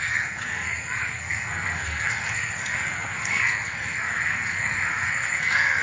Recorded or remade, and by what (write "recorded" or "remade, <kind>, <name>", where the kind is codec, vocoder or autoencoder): remade, codec, SNAC